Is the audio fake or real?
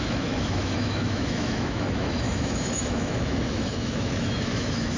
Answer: fake